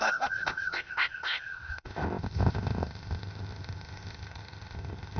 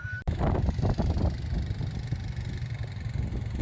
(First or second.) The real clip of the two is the second